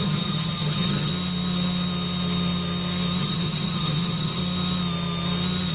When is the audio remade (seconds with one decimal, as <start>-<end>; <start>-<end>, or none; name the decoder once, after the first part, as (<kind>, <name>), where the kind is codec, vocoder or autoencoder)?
0.0-1.1 (vocoder, HiFi-GAN); 3.2-4.4